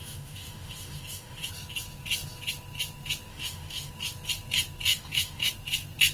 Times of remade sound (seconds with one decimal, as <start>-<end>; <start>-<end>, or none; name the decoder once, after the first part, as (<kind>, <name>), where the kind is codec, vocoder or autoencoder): 0.0-1.5 (autoencoder, DAC-VAE); 3.3-3.9; 4.9-5.5